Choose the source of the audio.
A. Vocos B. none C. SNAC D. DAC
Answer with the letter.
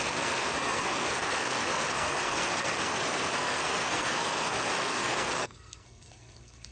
C